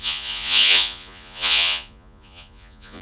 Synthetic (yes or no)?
yes